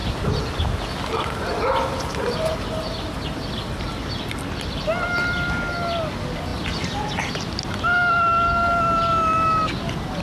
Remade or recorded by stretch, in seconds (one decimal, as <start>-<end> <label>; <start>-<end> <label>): 0.0-10.2 recorded